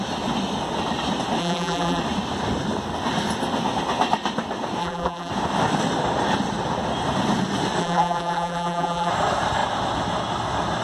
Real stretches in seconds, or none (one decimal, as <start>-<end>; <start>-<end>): 0.0-1.4; 2.0-4.8; 5.3-7.8; 9.1-10.8